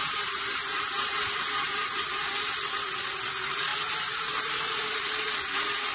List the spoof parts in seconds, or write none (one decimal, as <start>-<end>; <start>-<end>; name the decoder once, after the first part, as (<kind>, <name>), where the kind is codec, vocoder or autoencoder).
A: 0.0-2.1 (vocoder, BigVGAN v2); 3.7-4.5